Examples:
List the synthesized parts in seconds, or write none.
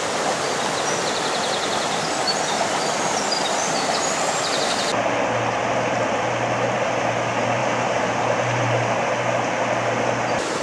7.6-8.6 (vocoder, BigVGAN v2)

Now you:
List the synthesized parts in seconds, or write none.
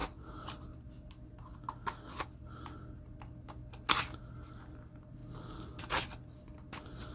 none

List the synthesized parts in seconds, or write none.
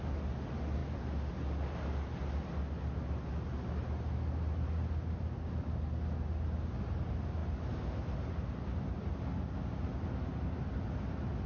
none